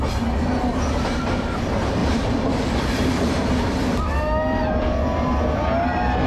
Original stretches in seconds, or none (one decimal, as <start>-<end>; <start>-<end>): 0.0-2.0; 3.3-6.3